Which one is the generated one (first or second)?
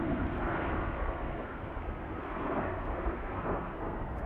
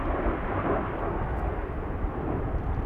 first